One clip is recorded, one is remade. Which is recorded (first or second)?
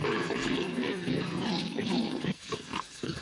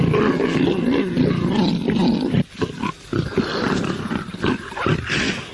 second